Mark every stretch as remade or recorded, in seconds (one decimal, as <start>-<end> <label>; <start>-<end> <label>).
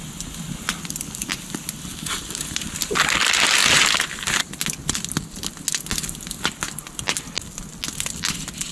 0.0-1.9 recorded; 1.9-2.7 remade; 2.7-8.7 recorded